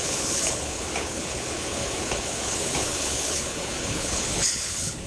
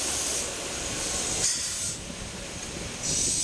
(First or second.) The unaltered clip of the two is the second